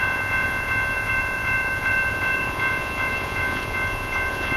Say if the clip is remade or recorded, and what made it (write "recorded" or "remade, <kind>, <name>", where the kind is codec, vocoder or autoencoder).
remade, vocoder, Vocos